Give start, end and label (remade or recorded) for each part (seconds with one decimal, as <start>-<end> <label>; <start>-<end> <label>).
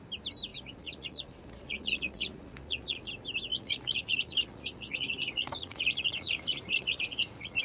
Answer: 0.0-0.5 recorded; 0.5-3.1 remade; 3.1-3.5 recorded; 3.5-7.6 remade